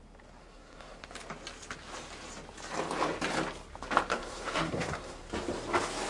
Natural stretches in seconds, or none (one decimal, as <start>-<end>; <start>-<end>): 0.0-0.4; 1.0-4.1; 5.2-6.1